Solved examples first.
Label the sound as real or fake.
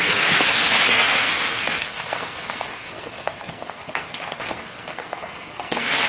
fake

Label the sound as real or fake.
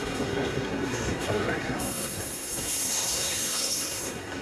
fake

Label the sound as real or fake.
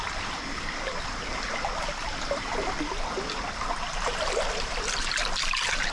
real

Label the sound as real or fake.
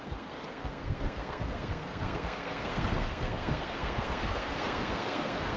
fake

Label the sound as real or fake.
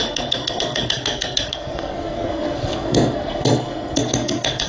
fake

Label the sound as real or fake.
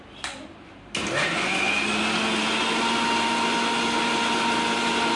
real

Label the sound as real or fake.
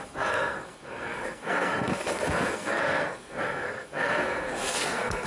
fake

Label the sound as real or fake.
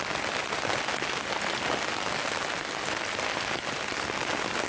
real